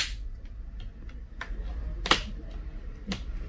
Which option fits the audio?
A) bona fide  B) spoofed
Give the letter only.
A